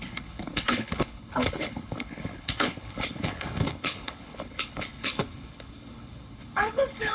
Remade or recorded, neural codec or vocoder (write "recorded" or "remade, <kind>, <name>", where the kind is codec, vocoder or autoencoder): remade, codec, HILCodec